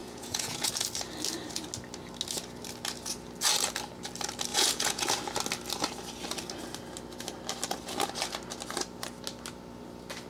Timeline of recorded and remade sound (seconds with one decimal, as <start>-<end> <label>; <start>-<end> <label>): 0.0-0.7 remade; 0.7-4.5 recorded; 4.5-5.1 remade; 5.1-10.3 recorded